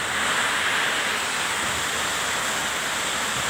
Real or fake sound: real